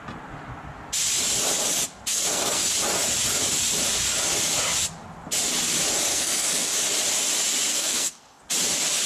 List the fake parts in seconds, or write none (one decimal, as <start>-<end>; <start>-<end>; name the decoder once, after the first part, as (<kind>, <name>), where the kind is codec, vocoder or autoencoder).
2.1-2.7 (codec, SNAC); 6.1-6.7; 7.7-8.4